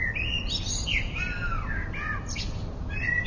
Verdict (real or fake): real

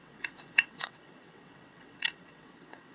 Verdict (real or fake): fake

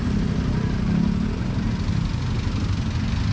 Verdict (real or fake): real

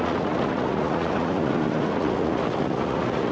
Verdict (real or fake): fake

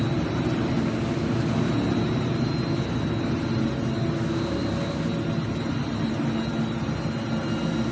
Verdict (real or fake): real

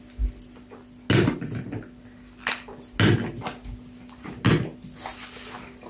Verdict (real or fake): real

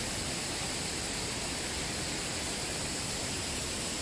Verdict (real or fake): real